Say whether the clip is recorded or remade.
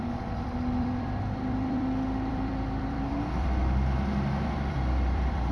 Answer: remade